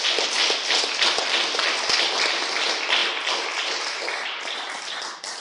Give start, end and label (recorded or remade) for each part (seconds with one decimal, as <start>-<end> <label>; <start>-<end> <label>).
0.0-5.4 recorded